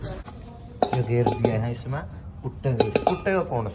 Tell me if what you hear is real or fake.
real